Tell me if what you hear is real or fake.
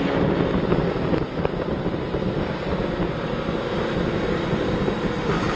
real